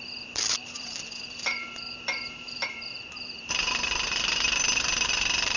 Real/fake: fake